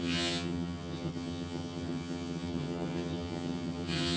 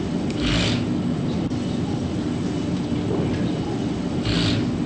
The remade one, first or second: first